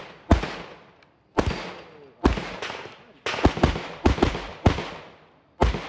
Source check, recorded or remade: recorded